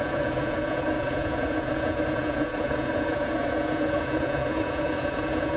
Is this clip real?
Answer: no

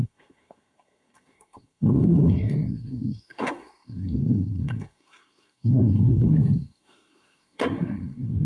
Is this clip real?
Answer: no